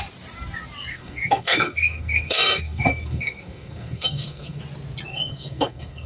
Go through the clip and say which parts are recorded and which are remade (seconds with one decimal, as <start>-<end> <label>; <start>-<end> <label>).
0.0-0.9 recorded; 0.9-4.6 remade; 4.6-5.1 recorded; 5.1-6.1 remade